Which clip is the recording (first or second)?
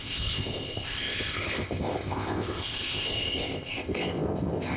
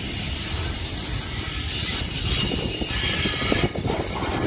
second